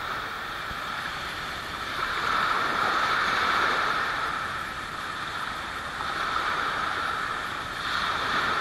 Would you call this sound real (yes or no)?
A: no